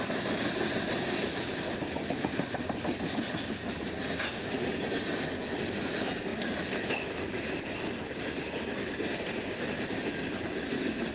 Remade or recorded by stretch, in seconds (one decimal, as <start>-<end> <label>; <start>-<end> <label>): 0.0-11.1 recorded